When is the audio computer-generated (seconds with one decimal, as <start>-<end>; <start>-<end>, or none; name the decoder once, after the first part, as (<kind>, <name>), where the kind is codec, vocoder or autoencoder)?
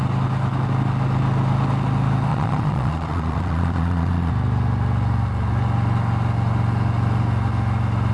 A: 2.3-4.3 (vocoder, Vocos)